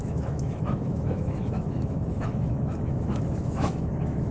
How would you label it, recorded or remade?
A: remade